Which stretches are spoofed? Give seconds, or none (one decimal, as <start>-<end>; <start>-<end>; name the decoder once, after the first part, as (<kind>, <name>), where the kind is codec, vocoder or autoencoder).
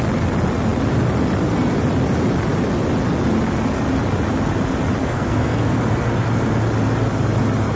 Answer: 5.0-5.8 (codec, SNAC)